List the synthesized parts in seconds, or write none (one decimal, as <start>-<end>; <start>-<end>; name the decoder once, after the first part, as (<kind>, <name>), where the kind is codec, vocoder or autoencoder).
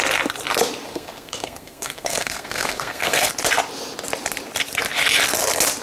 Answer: 0.9-3.3 (codec, SNAC)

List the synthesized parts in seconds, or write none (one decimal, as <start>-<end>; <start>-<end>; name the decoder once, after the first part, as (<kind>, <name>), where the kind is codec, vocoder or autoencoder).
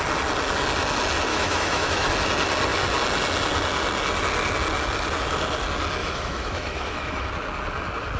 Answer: 1.3-2.1 (autoencoder, DAC-VAE); 6.0-7.3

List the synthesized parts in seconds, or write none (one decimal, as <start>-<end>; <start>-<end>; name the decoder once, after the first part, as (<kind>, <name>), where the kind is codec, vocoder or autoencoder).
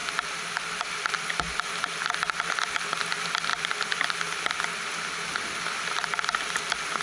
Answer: none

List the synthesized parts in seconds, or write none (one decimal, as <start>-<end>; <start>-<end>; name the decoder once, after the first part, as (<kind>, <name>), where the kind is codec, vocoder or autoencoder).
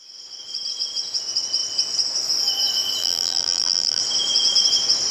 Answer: 3.0-4.0 (vocoder, BigVGAN v2)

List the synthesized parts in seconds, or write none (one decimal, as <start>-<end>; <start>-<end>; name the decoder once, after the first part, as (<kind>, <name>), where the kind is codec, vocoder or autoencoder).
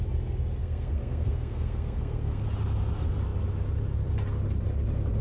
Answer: 0.6-2.4 (codec, SNAC)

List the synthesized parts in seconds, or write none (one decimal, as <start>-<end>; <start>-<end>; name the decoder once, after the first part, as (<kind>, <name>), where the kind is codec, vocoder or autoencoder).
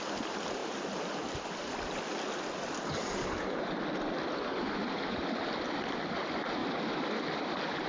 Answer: 0.6-3.6 (vocoder, BigVGAN v2); 6.6-7.5